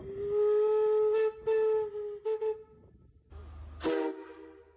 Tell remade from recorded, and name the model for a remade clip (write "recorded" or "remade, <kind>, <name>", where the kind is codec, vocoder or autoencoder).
recorded